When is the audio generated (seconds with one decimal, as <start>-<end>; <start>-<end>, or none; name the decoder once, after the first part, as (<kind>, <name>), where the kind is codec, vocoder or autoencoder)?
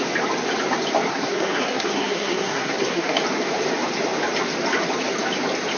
1.1-3.2 (codec, SNAC)